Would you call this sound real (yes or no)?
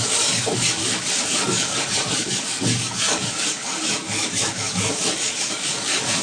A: no